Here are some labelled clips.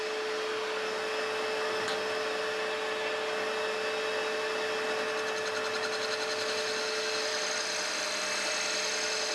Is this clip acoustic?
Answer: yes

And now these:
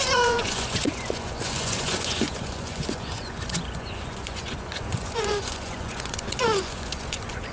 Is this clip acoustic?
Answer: no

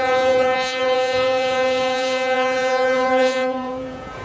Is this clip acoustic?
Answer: no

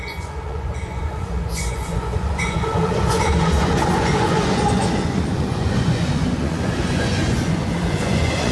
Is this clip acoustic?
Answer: no